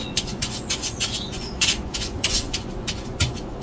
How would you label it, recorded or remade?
remade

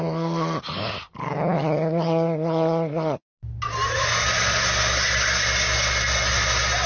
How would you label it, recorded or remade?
recorded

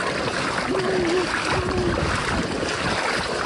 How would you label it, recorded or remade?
recorded